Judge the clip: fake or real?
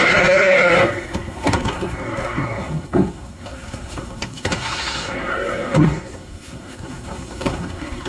fake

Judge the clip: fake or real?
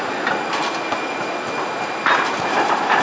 real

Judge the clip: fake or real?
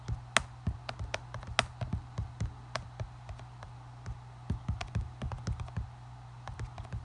real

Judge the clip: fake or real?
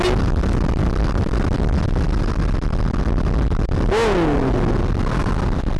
real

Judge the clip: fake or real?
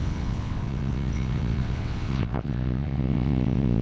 fake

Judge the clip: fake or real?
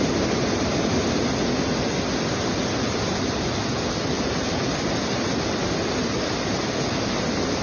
real